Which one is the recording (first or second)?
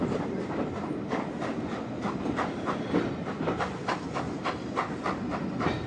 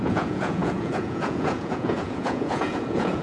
first